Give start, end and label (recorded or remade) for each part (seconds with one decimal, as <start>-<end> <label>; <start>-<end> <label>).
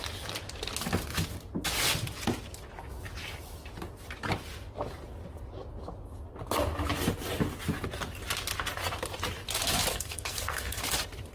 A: 0.0-9.9 recorded; 9.9-10.8 remade; 10.8-11.3 recorded